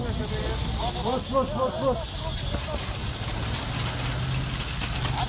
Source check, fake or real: real